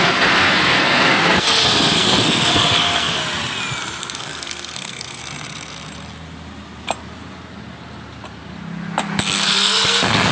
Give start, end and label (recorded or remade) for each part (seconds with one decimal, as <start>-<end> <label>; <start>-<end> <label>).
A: 0.0-3.2 remade; 3.2-4.0 recorded; 4.0-5.2 remade; 5.2-9.2 recorded; 9.2-10.3 remade